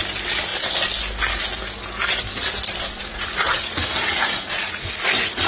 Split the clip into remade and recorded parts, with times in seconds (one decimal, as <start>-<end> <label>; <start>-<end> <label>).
0.0-3.1 recorded; 3.1-5.0 remade; 5.0-5.5 recorded